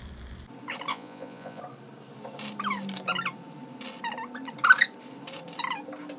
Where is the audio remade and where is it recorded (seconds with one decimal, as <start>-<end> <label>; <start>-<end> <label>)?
0.0-0.9 recorded; 0.9-1.6 remade; 1.6-6.2 recorded